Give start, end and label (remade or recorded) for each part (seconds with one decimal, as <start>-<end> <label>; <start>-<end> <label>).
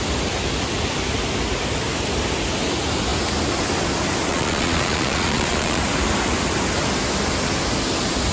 0.0-4.3 recorded; 4.3-5.8 remade; 5.8-8.3 recorded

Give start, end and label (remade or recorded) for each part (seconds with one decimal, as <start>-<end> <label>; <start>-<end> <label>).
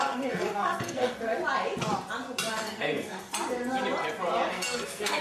0.0-1.4 remade; 1.4-2.5 recorded; 2.5-3.3 remade; 3.3-4.5 recorded; 4.5-5.2 remade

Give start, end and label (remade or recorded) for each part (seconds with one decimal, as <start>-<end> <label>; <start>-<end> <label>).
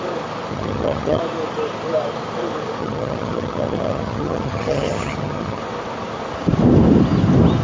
0.0-0.5 recorded; 0.5-1.2 remade; 1.2-2.8 recorded; 2.8-5.6 remade; 5.6-7.6 recorded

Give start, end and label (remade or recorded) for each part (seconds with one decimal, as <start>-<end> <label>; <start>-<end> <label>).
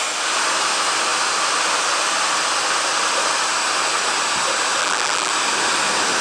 0.0-4.8 recorded; 4.8-5.3 remade; 5.3-6.2 recorded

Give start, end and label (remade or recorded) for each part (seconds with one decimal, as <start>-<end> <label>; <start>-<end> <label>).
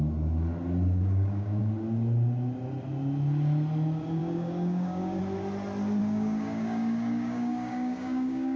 0.0-1.0 recorded; 1.0-1.6 remade; 1.6-4.2 recorded; 4.2-5.2 remade; 5.2-6.0 recorded; 6.0-8.6 remade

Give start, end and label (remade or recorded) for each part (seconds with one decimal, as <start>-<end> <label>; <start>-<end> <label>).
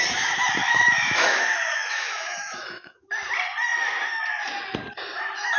0.0-0.6 recorded; 0.6-3.1 remade; 3.1-5.6 recorded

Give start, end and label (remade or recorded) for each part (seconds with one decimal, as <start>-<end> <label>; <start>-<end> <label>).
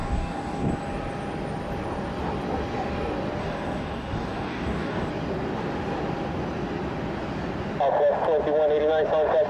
0.0-0.7 remade; 0.7-3.4 recorded; 3.4-5.1 remade; 5.1-9.5 recorded